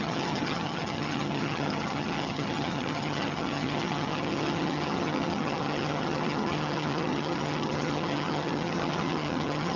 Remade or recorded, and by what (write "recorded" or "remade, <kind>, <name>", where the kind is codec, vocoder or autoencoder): remade, vocoder, HiFi-GAN